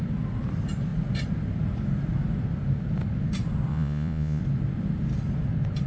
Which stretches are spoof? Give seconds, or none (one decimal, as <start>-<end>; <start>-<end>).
3.7-4.4